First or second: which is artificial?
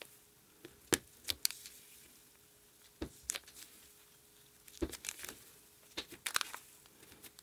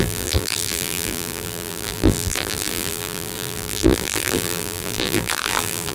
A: second